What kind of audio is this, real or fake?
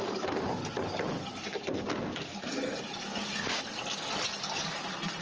real